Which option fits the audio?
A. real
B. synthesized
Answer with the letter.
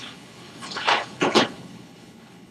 B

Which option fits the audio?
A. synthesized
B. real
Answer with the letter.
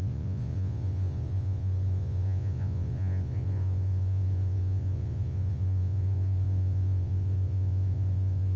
A